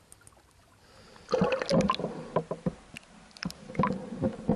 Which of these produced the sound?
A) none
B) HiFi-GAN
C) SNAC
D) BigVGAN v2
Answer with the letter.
A